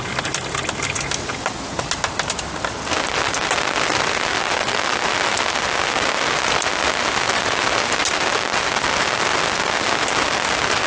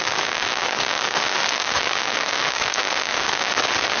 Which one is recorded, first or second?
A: first